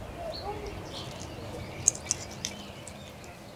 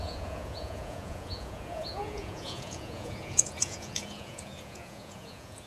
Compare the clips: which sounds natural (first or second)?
first